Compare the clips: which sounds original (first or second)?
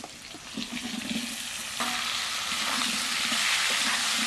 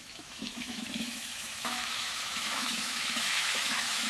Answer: first